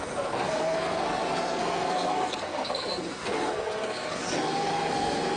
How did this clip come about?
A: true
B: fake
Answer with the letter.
B